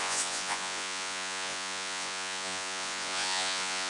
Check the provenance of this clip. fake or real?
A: fake